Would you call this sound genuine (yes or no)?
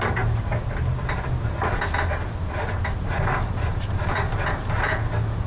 yes